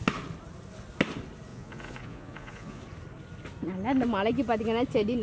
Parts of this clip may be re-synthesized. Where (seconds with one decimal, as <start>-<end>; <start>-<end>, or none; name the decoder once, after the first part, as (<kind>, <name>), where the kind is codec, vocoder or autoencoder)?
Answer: 1.5-2.8 (vocoder, Vocos)